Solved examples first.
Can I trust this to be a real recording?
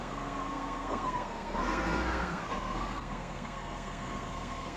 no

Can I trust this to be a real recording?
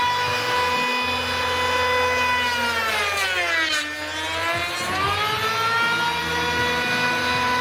yes